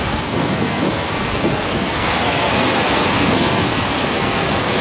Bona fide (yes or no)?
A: no